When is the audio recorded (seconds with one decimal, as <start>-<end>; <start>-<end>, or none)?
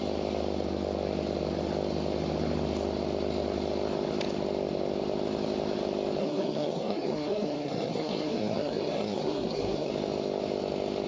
0.0-6.2; 9.9-11.1